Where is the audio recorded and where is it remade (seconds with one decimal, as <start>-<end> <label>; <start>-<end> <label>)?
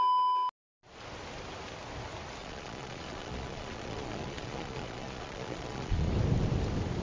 0.0-2.4 recorded; 2.4-6.1 remade; 6.1-7.0 recorded